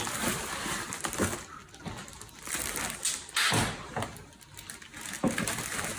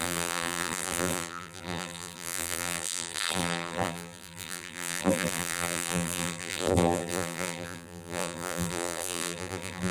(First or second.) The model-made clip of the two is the second